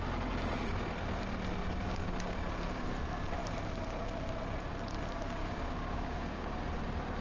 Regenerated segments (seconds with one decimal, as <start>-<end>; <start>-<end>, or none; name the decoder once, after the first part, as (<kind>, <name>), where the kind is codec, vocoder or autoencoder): 1.8-2.4 (codec, DAC); 5.4-6.6